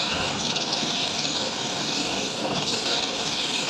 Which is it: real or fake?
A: fake